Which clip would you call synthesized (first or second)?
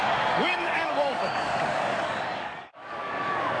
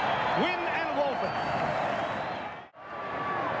first